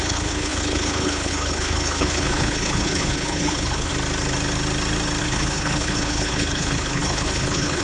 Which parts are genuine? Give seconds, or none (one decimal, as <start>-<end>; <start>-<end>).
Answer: 3.9-5.2

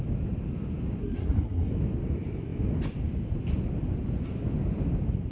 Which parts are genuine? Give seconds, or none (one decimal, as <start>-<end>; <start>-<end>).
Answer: 0.0-1.0; 1.7-5.3

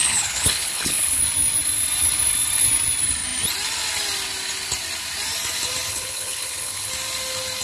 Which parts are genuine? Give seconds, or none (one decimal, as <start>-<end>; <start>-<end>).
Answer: 1.2-5.9; 6.9-7.6

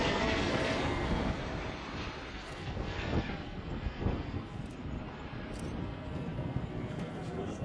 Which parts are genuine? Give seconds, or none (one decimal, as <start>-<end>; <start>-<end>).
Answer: 1.4-2.3; 4.6-5.8